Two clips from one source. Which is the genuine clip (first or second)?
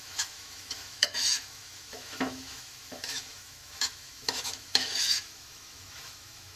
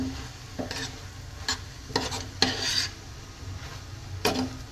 second